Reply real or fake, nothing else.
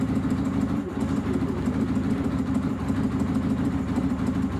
fake